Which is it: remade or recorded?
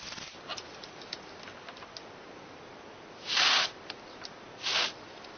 recorded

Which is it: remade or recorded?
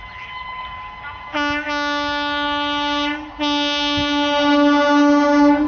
recorded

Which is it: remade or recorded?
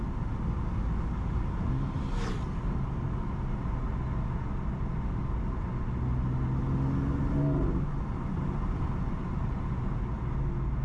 recorded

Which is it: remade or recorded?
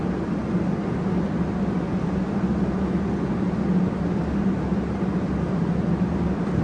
recorded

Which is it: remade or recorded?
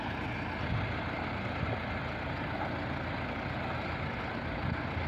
recorded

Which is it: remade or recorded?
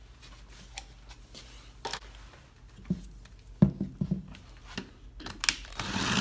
recorded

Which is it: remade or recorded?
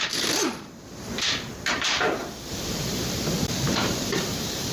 remade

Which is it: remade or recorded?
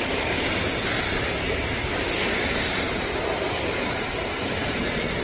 remade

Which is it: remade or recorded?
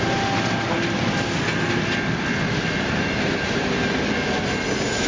recorded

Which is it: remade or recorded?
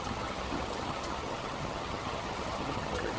remade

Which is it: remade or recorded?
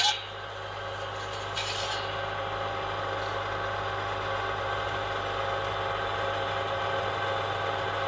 recorded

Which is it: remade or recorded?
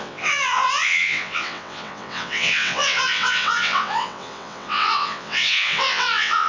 remade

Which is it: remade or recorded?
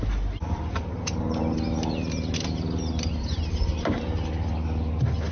recorded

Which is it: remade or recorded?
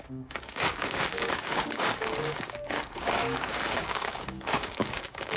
remade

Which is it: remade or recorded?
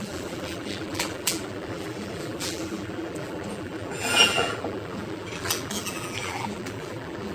remade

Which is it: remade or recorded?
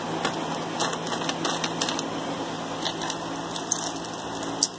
recorded